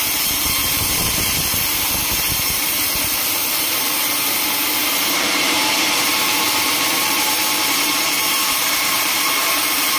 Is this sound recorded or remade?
remade